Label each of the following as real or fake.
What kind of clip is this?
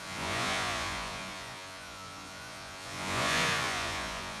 fake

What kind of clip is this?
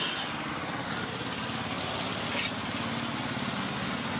real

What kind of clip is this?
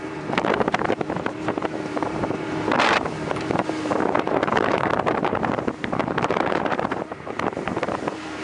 fake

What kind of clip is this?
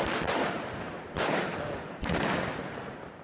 real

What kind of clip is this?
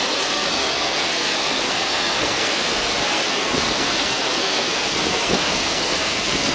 fake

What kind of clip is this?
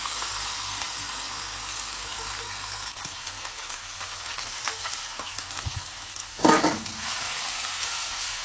fake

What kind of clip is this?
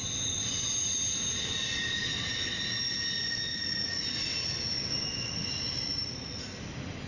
real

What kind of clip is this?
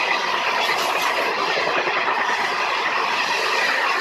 real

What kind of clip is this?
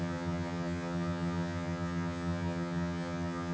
fake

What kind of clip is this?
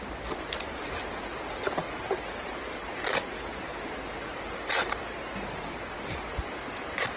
real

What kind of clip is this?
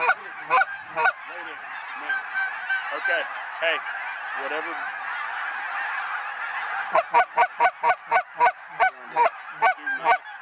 real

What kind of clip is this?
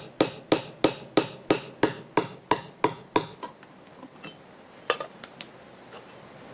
real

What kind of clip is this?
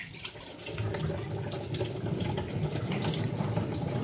real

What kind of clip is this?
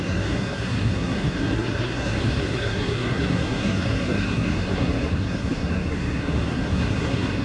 fake